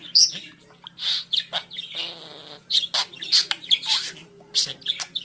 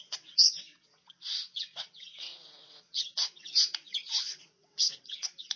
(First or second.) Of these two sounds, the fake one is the second